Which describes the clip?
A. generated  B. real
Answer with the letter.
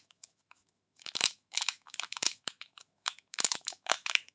A